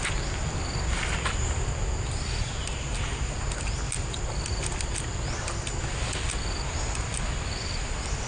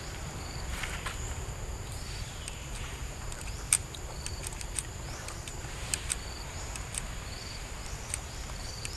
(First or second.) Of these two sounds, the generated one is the second